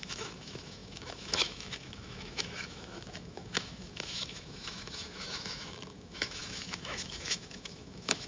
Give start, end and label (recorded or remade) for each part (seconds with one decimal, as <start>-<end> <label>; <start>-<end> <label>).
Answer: 0.0-8.3 remade